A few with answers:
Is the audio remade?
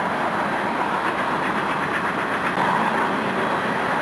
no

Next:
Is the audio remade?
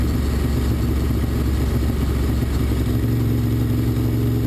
no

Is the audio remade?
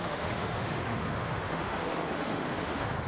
yes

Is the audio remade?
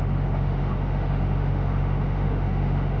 yes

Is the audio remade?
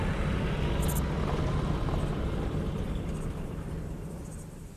no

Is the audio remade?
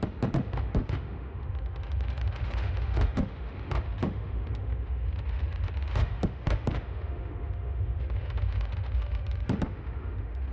yes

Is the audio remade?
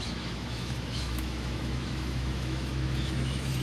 yes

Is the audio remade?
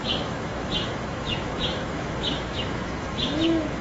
yes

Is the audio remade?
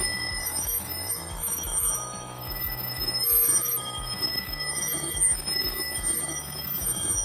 yes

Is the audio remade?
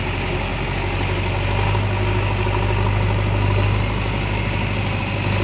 no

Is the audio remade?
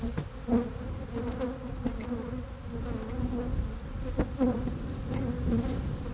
no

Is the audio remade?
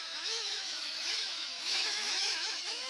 yes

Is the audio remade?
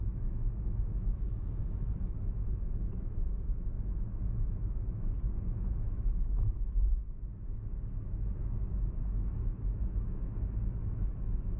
yes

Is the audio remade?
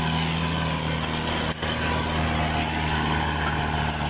no